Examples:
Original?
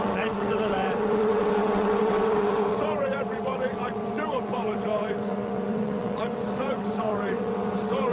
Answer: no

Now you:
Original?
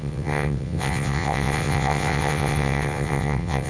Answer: no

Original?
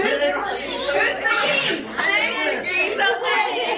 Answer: yes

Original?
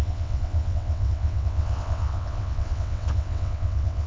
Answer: no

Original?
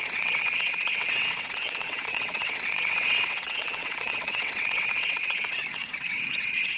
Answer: no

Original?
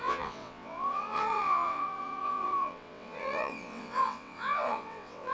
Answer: no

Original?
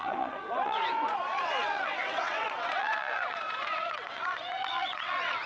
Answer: no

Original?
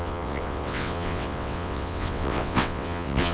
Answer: no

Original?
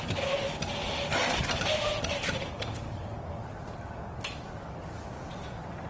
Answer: yes